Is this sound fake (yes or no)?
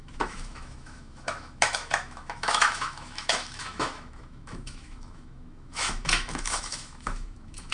yes